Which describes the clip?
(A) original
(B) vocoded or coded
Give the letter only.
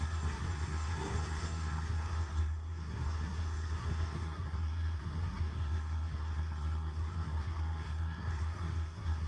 B